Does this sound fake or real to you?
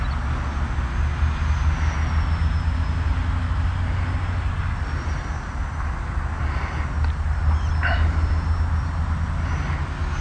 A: real